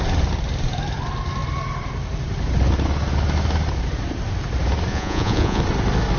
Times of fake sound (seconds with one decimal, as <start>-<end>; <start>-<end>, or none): 4.9-5.6